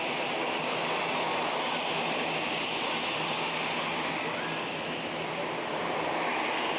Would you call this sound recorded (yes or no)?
yes